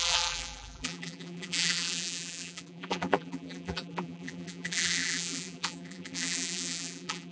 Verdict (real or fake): fake